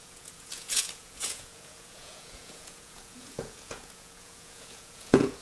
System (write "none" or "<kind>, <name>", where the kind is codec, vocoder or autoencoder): vocoder, Vocos